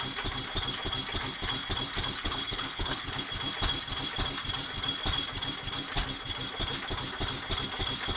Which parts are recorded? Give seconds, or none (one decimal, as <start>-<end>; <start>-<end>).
0.0-2.2; 3.3-8.2